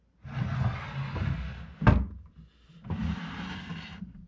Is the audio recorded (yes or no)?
yes